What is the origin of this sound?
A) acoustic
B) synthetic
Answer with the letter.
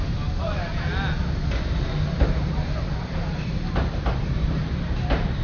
A